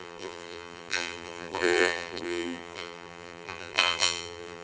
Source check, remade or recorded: remade